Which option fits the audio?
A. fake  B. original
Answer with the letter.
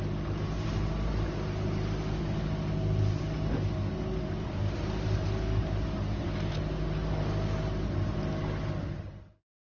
B